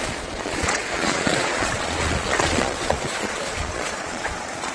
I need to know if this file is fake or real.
fake